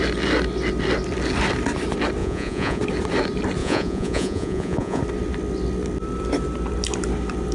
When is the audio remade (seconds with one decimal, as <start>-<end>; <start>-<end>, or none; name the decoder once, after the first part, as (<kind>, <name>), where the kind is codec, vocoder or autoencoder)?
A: 2.2-2.8 (vocoder, Vocos); 3.6-5.0